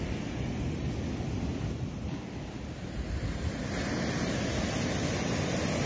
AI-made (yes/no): no